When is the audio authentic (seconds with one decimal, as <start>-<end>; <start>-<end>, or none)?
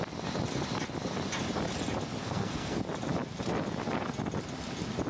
0.0-2.2; 2.8-5.1